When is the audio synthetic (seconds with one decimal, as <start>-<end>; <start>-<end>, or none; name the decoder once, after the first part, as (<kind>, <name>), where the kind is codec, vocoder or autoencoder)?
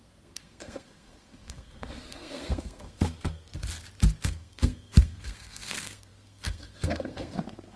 0.0-3.5 (codec, SNAC); 4.2-7.8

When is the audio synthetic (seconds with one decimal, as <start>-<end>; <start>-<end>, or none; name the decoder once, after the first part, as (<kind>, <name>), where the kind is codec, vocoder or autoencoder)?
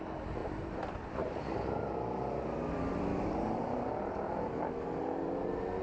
0.4-1.8 (vocoder, BigVGAN v2); 3.1-4.3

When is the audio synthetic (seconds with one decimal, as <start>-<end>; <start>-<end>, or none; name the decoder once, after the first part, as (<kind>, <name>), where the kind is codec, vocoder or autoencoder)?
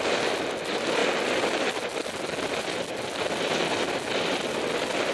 none